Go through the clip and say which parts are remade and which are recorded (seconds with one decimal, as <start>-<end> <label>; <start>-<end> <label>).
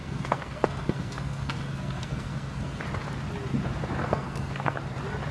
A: 0.0-2.8 remade; 2.8-4.0 recorded; 4.0-4.8 remade; 4.8-5.3 recorded